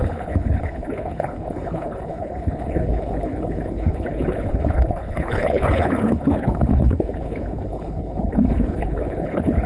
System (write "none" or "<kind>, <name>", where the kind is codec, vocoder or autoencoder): codec, HILCodec